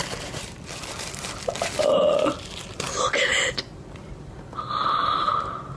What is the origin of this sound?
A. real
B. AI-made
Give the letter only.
B